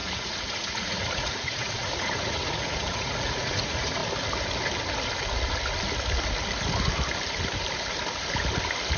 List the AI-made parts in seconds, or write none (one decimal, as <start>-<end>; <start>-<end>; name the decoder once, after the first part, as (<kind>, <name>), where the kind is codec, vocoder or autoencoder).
0.0-4.0 (vocoder, Vocos)